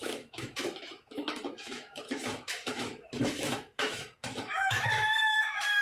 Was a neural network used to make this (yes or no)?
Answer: yes